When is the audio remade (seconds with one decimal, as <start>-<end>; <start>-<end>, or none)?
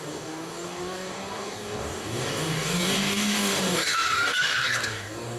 0.0-5.4